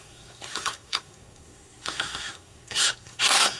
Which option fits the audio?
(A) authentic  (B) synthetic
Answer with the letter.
B